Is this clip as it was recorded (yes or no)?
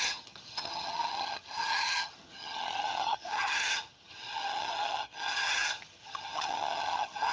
no